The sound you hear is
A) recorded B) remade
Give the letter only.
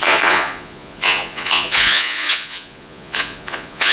B